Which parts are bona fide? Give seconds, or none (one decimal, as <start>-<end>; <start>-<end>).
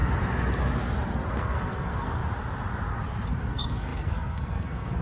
0.0-1.3; 2.2-3.5